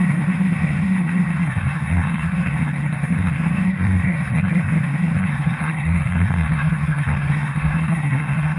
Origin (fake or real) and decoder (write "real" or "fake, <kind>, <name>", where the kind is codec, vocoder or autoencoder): fake, codec, SNAC